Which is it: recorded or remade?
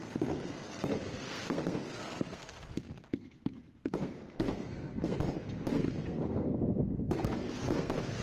remade